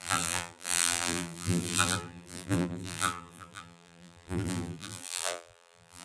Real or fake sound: fake